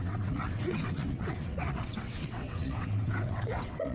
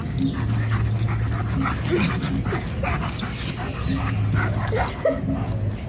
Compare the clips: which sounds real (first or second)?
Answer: second